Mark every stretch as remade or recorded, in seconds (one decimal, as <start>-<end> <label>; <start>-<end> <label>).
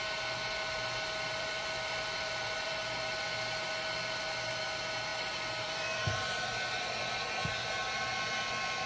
0.0-1.3 recorded; 1.3-2.7 remade; 2.7-5.1 recorded; 5.1-7.1 remade; 7.1-8.9 recorded